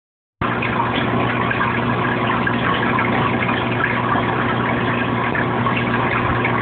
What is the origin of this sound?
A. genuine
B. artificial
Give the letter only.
A